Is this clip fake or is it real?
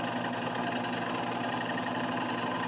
real